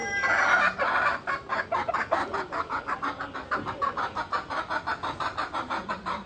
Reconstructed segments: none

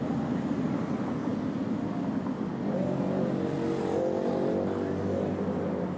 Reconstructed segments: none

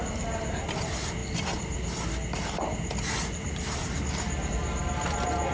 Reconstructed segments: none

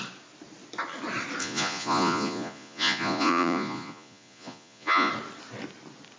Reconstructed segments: 1.4-5.1 (vocoder, Vocos)

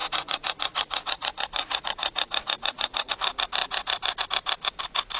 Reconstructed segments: 0.0-3.1 (vocoder, Vocos)